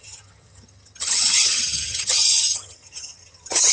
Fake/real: fake